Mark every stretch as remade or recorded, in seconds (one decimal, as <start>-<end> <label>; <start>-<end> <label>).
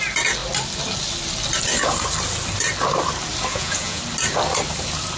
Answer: 0.0-3.5 recorded; 3.5-4.0 remade; 4.0-5.2 recorded